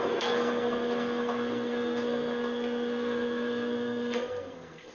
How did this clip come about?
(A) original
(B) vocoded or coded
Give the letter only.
B